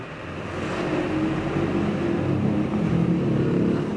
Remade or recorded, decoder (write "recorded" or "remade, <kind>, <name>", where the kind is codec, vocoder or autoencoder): recorded